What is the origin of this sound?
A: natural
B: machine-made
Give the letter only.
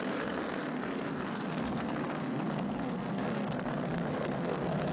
B